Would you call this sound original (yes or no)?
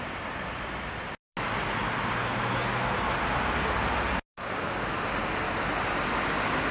yes